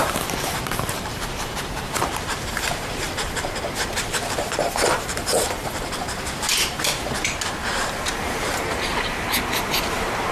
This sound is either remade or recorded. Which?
remade